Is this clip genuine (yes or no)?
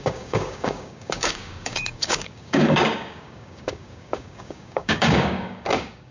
no